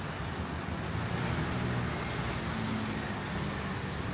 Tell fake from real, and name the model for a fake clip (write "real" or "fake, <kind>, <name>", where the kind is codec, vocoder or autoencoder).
real